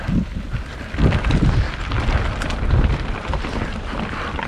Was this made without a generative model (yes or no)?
yes